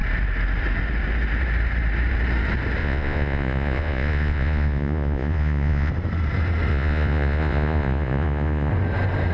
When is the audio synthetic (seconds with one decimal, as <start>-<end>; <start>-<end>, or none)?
2.8-5.9; 6.7-8.7